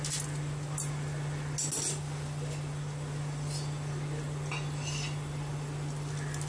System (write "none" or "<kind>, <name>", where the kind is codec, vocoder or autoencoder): none